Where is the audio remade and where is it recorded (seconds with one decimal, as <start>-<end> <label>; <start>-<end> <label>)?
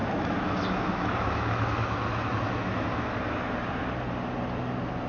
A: 0.0-3.1 remade; 3.1-5.1 recorded